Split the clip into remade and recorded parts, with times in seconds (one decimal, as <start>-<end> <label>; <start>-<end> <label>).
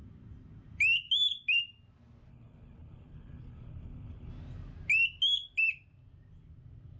0.0-2.3 recorded; 2.3-4.3 remade; 4.3-7.0 recorded